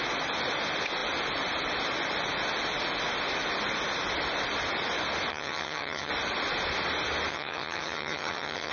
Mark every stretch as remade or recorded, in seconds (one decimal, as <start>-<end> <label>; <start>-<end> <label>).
0.0-5.3 recorded; 5.3-6.1 remade; 6.1-7.3 recorded; 7.3-8.7 remade

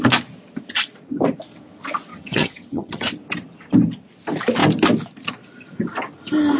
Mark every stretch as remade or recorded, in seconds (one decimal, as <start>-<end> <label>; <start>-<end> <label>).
0.0-2.1 recorded; 2.1-3.1 remade; 3.1-6.6 recorded

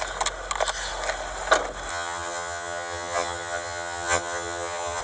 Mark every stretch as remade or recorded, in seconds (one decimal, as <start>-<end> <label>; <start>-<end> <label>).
0.0-1.9 recorded; 1.9-5.0 remade

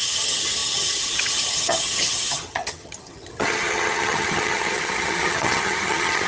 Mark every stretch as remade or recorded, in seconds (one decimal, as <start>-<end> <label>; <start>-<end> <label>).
0.0-6.3 remade

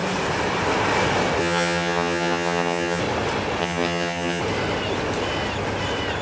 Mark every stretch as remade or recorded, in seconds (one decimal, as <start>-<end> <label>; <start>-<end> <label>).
0.0-1.4 recorded; 1.4-3.0 remade; 3.0-3.6 recorded; 3.6-4.4 remade; 4.4-6.2 recorded

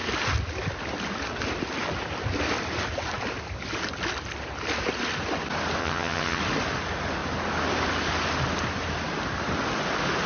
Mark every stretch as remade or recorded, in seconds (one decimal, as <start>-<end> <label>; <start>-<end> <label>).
0.0-5.8 recorded; 5.8-6.4 remade; 6.4-10.3 recorded